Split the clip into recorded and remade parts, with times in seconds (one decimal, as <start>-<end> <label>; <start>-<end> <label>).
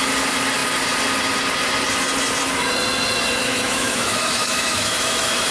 0.0-3.4 recorded; 3.4-5.5 remade